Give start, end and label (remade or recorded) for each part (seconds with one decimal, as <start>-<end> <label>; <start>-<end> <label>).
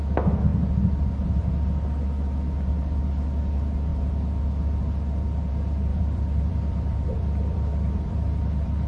0.0-5.9 recorded; 5.9-8.9 remade